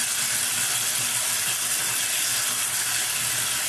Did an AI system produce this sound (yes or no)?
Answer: no